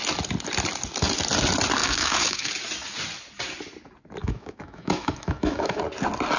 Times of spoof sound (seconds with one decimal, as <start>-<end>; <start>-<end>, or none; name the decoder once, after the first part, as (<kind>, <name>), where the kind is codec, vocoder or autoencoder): 1.8-2.5 (autoencoder, DAC-VAE); 4.2-5.8